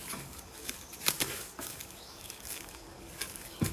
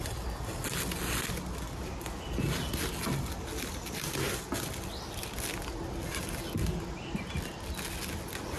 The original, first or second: second